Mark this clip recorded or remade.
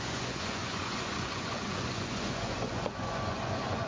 remade